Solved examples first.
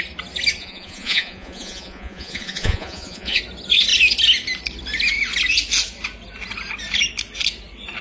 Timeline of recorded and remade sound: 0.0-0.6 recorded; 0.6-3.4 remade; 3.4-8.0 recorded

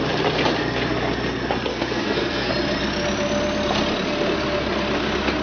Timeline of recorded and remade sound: 0.0-1.7 recorded; 1.7-2.5 remade; 2.5-5.4 recorded

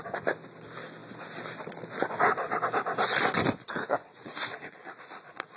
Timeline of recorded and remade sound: 0.0-3.9 recorded; 3.9-5.6 remade

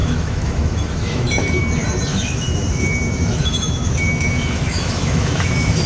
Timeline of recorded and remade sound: 0.0-1.6 remade; 1.6-2.1 recorded; 2.1-5.9 remade

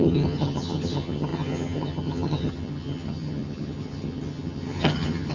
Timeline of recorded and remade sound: 0.0-5.3 remade

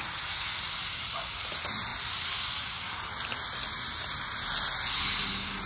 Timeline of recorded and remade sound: 0.0-5.7 recorded

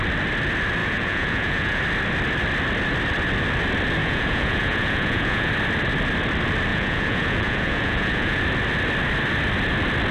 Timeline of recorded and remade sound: 0.0-0.8 recorded; 0.8-1.8 remade; 1.8-4.0 recorded; 4.0-5.5 remade; 5.5-6.7 recorded; 6.7-8.4 remade; 8.4-10.1 recorded

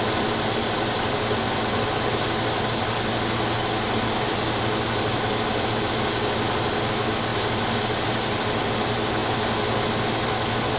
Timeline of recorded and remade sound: 0.0-10.8 recorded